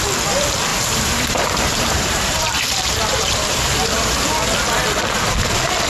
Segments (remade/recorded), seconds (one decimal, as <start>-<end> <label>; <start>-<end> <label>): 0.0-0.7 recorded; 0.7-4.2 remade; 4.2-5.9 recorded